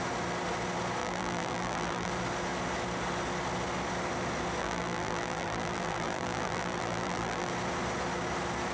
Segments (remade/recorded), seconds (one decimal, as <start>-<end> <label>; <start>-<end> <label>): 0.0-1.0 recorded; 1.0-2.1 remade; 2.1-4.6 recorded; 4.6-7.5 remade; 7.5-8.7 recorded